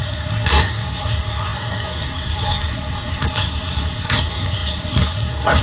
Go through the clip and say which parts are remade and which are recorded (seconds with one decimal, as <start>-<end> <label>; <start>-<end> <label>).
0.0-5.6 remade